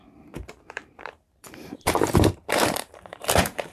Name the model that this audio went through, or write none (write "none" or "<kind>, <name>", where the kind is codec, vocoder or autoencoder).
vocoder, BigVGAN v2